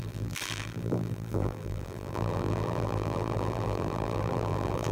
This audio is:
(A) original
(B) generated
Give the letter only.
B